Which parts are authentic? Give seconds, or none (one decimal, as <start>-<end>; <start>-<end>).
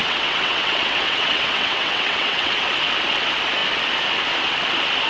2.5-5.1